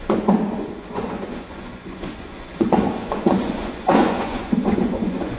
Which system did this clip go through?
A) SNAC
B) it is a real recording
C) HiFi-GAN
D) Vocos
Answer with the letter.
D